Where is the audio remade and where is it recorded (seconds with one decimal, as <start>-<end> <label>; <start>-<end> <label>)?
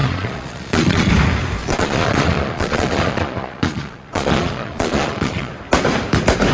0.0-1.1 remade; 1.1-1.6 recorded; 1.6-5.5 remade; 5.5-6.5 recorded